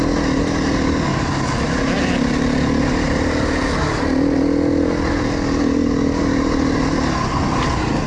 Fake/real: real